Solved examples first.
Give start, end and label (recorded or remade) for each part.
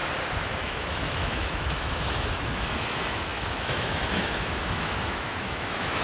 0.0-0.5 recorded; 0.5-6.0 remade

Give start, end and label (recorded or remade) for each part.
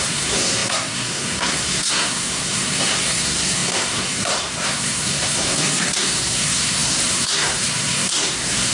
0.0-8.7 remade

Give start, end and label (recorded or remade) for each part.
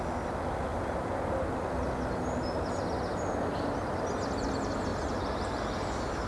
0.0-6.3 recorded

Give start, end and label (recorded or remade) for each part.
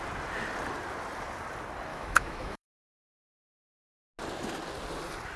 0.0-1.9 recorded; 1.9-3.3 remade; 3.3-5.4 recorded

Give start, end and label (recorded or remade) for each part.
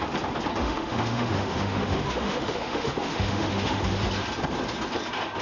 0.0-0.6 recorded; 0.6-3.8 remade; 3.8-5.4 recorded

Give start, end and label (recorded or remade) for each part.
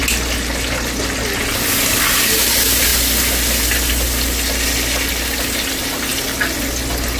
0.0-7.2 recorded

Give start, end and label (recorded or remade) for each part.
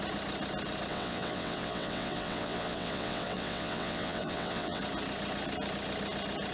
0.0-0.9 recorded; 0.9-4.8 remade; 4.8-6.5 recorded